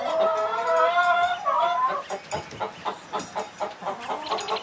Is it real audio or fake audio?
real